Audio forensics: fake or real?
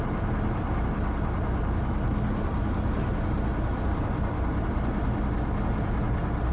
real